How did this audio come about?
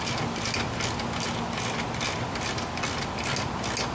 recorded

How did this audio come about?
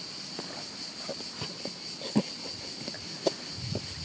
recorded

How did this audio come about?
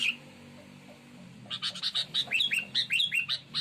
recorded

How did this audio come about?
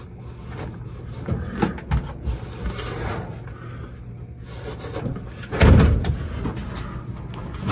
recorded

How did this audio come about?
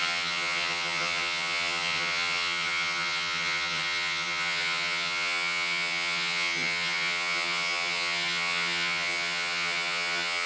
remade